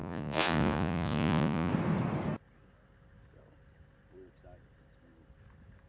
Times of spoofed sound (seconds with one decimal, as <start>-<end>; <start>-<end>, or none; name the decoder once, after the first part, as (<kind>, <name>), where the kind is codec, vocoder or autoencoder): 0.0-1.7 (vocoder, Vocos)